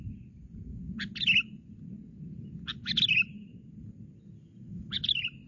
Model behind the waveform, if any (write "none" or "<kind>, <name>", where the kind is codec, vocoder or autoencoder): none